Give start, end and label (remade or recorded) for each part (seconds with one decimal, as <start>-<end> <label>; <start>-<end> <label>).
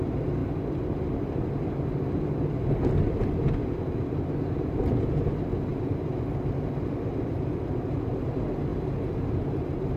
0.0-0.4 remade; 0.4-4.6 recorded; 4.6-5.7 remade; 5.7-7.1 recorded; 7.1-8.7 remade; 8.7-9.2 recorded; 9.2-10.0 remade